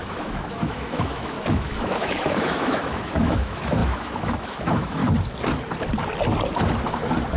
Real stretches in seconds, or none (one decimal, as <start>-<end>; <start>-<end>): 5.0-7.4